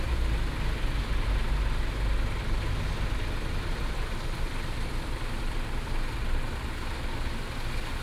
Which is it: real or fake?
real